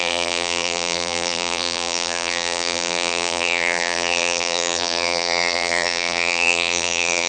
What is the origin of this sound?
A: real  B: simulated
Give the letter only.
B